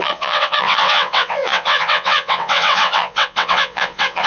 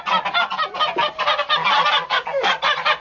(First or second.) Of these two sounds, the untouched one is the second